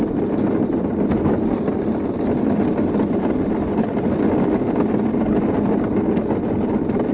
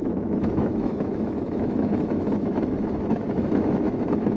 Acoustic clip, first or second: first